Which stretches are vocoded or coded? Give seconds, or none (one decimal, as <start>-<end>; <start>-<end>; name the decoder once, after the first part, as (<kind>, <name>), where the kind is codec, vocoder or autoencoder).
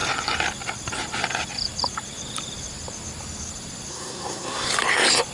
3.9-4.7 (codec, SNAC)